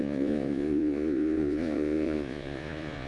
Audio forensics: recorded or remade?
remade